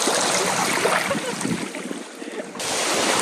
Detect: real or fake real